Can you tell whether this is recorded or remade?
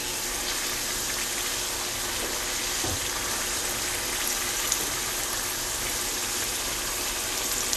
recorded